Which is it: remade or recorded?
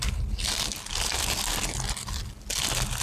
recorded